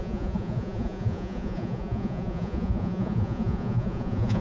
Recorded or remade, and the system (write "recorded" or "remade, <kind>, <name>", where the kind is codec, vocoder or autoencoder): remade, vocoder, Vocos